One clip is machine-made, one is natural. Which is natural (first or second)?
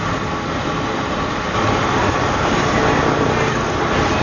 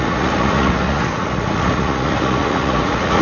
first